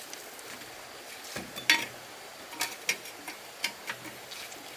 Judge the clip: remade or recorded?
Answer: recorded